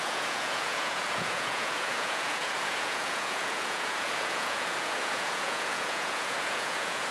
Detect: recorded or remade remade